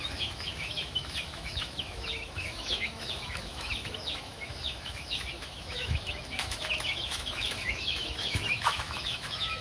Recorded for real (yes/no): no